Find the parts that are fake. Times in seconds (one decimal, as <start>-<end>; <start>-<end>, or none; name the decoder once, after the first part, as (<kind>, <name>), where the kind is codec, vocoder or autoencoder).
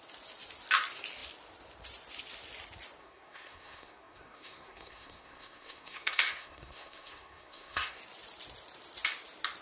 3.0-8.0 (codec, SNAC)